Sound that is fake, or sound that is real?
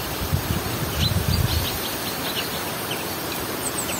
fake